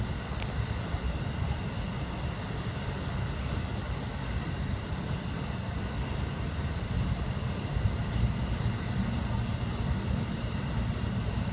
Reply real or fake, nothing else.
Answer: real